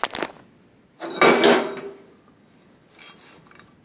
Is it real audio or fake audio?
real